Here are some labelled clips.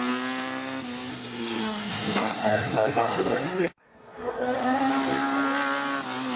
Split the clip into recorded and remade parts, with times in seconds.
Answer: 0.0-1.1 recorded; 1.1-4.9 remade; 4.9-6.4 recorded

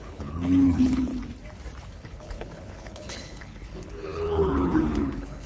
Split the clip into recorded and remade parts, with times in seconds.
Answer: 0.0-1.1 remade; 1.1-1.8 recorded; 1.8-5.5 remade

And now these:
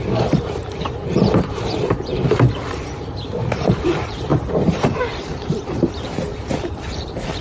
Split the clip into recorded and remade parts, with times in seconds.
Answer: 0.0-7.4 remade